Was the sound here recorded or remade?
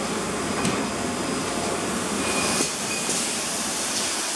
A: recorded